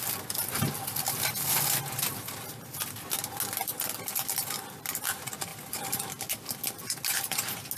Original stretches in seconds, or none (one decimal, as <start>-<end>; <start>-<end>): 0.0-7.8